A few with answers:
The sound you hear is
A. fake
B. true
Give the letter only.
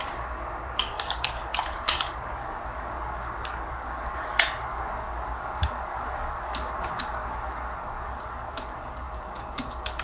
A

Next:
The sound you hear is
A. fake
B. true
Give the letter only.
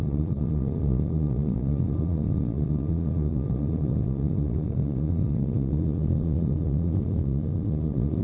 A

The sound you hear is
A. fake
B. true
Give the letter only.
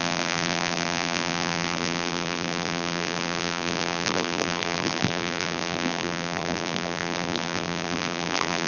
A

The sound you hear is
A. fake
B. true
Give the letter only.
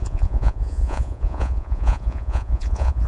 A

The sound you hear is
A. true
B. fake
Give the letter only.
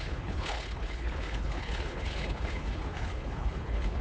B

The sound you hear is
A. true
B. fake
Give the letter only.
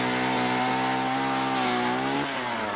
A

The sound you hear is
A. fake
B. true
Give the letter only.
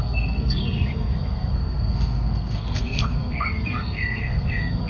A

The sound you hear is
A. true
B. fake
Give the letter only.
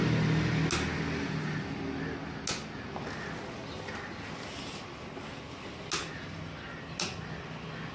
A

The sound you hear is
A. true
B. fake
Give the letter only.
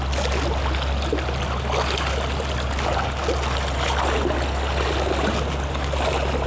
A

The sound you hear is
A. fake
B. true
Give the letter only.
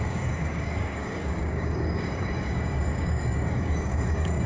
A